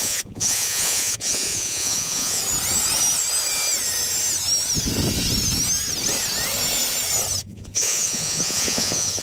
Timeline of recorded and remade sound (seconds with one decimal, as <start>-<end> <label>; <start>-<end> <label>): 0.0-2.4 remade; 2.4-7.4 recorded; 7.4-9.2 remade